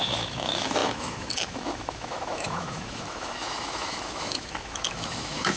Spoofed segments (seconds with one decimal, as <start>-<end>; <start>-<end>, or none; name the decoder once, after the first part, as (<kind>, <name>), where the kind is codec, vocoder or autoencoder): 0.0-5.6 (autoencoder, DAC-VAE)